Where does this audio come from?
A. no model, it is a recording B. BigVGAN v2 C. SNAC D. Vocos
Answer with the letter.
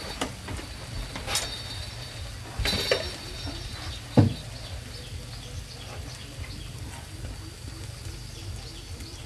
A